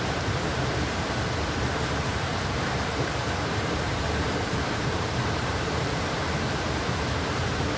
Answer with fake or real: fake